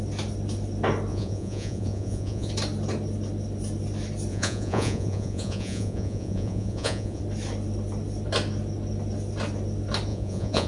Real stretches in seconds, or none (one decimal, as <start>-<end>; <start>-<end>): 0.0-1.1; 2.5-4.3; 7.2-10.1